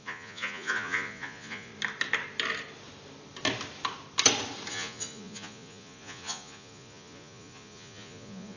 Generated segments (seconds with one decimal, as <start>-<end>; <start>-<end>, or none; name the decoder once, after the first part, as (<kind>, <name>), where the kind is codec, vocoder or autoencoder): 0.0-1.7 (vocoder, Vocos); 4.7-8.6